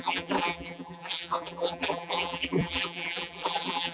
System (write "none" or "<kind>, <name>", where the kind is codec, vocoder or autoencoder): vocoder, BigVGAN v2